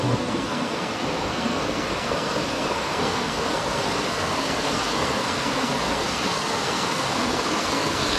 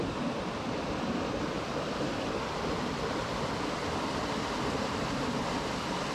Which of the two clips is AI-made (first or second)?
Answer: first